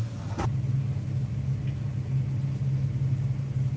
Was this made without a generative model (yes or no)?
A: yes